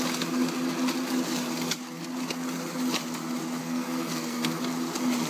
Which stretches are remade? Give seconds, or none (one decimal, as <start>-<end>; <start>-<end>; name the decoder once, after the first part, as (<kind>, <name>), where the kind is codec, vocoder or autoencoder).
3.6-4.6 (codec, SNAC)